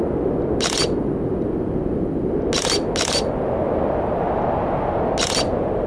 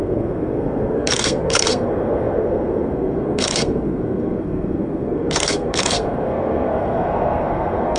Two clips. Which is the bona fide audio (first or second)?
first